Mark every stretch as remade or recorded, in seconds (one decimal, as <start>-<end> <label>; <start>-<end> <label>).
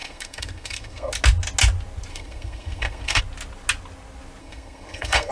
0.0-1.1 remade; 1.1-2.1 recorded; 2.1-3.2 remade; 3.2-4.4 recorded; 4.4-5.3 remade